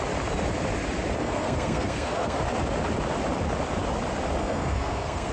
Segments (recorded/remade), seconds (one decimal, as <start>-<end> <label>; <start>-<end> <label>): 0.0-1.2 recorded; 1.2-2.4 remade; 2.4-4.4 recorded; 4.4-5.3 remade